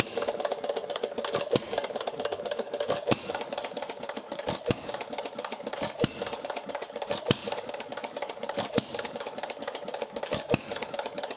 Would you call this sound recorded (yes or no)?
no